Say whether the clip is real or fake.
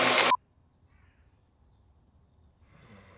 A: real